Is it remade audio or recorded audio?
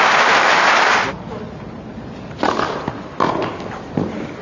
recorded